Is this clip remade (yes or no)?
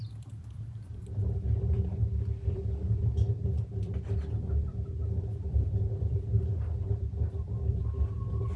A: yes